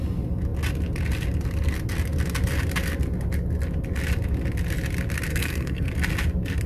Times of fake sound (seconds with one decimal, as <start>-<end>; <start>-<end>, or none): 5.3-5.9